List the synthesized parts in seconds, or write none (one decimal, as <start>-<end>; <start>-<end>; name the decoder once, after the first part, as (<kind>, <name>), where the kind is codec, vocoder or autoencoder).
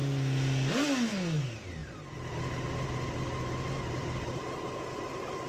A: none